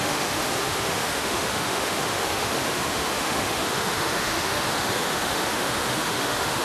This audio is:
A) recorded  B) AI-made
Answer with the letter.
B